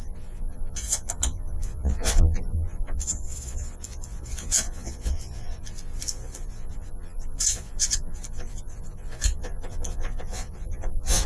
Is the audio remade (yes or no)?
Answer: yes